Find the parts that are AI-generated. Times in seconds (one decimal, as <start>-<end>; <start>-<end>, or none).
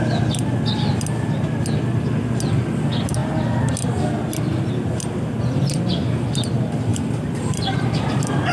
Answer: 6.9-8.5